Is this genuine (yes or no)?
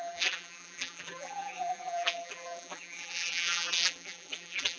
no